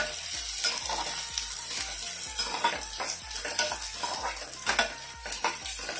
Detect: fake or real real